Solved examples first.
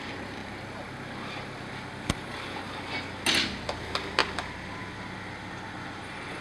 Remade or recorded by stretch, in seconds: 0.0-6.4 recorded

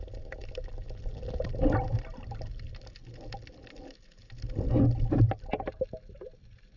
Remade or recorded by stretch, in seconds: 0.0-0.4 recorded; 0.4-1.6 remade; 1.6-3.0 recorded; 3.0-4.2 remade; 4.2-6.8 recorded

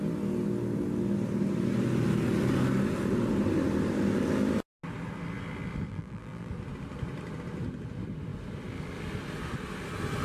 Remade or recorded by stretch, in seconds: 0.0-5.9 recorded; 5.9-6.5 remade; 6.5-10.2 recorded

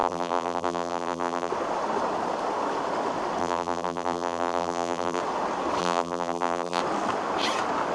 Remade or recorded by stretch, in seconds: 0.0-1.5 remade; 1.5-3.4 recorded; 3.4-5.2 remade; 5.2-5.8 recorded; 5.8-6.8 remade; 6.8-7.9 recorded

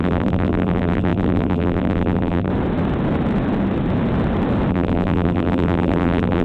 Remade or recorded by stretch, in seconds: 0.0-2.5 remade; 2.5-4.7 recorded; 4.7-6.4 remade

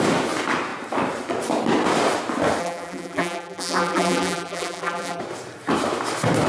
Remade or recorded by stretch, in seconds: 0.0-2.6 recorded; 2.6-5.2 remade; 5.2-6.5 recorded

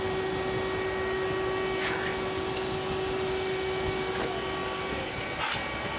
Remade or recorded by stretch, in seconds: 0.0-2.1 recorded; 2.1-4.1 remade; 4.1-4.6 recorded; 4.6-5.3 remade; 5.3-6.0 recorded

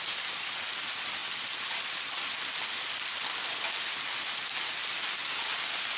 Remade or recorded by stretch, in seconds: 0.0-5.2 recorded; 5.2-6.0 remade